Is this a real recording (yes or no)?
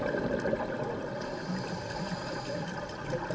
no